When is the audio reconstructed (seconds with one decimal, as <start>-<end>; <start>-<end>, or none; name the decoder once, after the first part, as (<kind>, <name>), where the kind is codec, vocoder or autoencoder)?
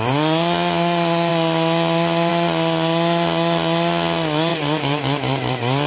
4.5-5.9 (vocoder, BigVGAN v2)